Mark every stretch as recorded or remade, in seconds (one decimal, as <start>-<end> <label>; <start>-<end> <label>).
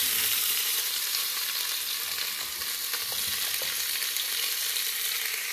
0.0-1.5 remade; 1.5-5.5 recorded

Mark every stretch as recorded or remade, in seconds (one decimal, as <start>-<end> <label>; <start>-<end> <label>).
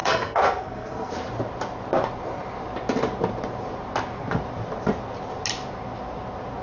0.0-1.1 remade; 1.1-6.6 recorded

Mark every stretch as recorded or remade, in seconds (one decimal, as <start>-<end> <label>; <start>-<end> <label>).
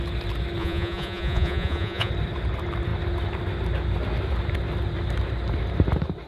0.0-0.6 recorded; 0.6-2.1 remade; 2.1-6.3 recorded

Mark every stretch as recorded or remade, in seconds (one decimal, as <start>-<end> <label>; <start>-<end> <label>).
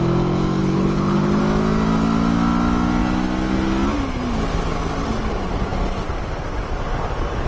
0.0-0.6 recorded; 0.6-1.4 remade; 1.4-7.5 recorded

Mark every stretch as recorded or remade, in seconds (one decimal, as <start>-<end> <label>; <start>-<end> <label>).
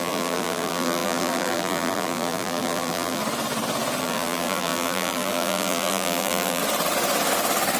0.0-3.2 remade; 3.2-4.0 recorded; 4.0-6.6 remade; 6.6-7.8 recorded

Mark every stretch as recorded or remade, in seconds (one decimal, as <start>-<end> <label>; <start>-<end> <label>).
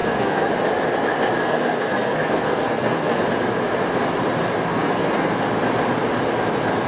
0.0-0.5 remade; 0.5-1.4 recorded; 1.4-3.2 remade; 3.2-4.7 recorded; 4.7-5.3 remade; 5.3-6.9 recorded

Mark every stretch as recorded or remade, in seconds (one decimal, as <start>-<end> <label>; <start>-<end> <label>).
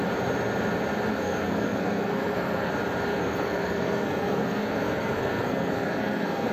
0.0-1.1 recorded; 1.1-2.7 remade; 2.7-3.1 recorded; 3.1-6.5 remade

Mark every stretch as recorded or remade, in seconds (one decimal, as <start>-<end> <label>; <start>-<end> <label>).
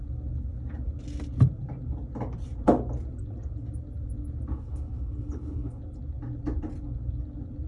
0.0-4.5 recorded; 4.5-5.8 remade; 5.8-7.7 recorded